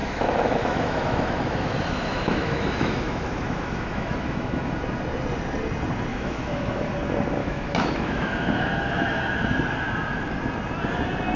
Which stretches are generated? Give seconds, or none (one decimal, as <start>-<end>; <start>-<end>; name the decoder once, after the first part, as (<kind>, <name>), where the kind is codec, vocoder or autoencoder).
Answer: 0.0-4.7 (autoencoder, DAC-VAE); 6.1-6.9; 7.4-9.4